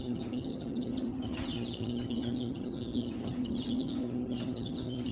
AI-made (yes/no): yes